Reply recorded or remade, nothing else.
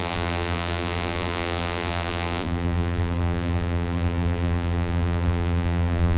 remade